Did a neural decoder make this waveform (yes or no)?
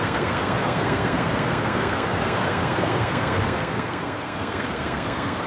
yes